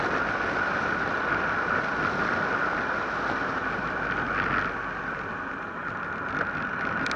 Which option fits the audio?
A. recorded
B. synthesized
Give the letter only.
A